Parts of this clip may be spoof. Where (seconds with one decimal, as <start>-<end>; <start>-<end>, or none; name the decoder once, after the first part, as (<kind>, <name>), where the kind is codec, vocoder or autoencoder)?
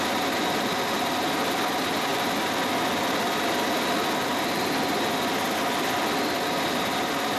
none